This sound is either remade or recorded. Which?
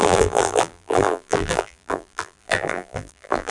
remade